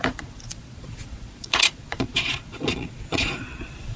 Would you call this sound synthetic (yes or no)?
yes